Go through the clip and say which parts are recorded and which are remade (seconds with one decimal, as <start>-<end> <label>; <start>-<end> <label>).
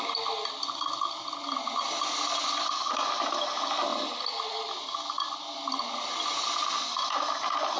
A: 0.0-7.8 recorded